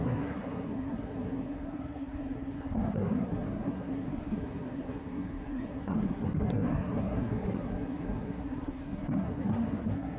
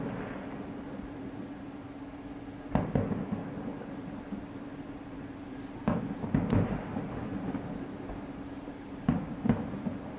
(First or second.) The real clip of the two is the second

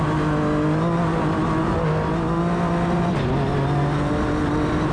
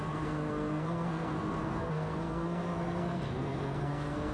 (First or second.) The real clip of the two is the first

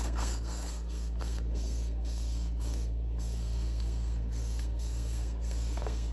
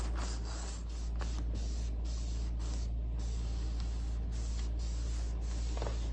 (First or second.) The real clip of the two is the second